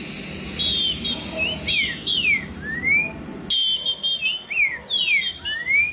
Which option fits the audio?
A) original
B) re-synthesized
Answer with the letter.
A